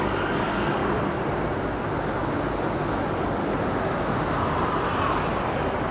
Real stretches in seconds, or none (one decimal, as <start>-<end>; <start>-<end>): 0.8-2.8; 3.4-5.4